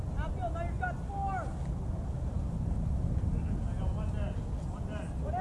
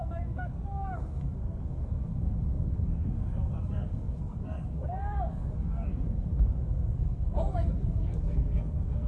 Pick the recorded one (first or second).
first